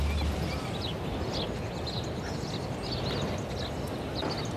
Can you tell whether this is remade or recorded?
recorded